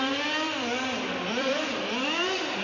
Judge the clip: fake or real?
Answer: fake